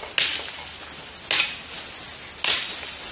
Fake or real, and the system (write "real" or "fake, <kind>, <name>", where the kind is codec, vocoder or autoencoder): real